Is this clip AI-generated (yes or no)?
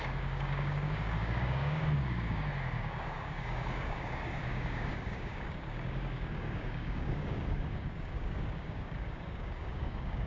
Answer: yes